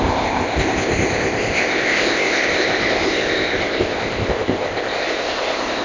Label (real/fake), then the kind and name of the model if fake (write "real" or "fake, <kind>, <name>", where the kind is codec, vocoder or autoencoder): fake, codec, ZipCodec